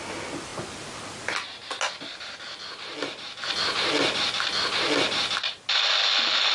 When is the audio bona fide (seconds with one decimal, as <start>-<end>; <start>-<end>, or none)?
0.0-6.5